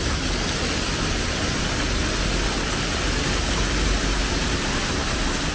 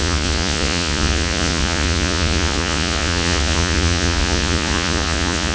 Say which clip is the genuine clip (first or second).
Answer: first